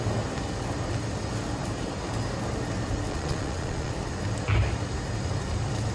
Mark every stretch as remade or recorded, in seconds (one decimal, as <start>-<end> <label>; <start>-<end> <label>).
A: 0.0-3.1 recorded; 3.1-3.9 remade; 3.9-5.9 recorded